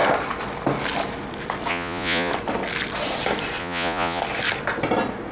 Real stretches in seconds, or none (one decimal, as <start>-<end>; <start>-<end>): 0.0-1.7; 2.3-3.6; 4.2-5.3